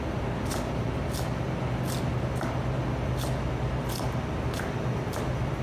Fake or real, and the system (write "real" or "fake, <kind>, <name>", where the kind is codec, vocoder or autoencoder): real